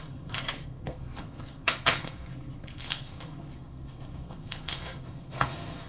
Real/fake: fake